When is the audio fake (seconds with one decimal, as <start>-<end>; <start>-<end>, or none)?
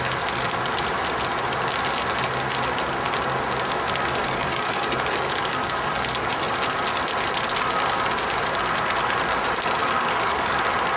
4.2-6.3; 9.8-10.6